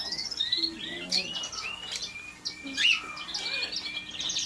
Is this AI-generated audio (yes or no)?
no